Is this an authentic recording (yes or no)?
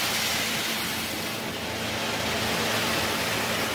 yes